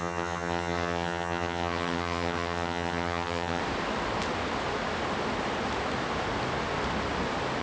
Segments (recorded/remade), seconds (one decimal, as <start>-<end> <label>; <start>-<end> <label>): 0.0-3.6 remade; 3.6-7.6 recorded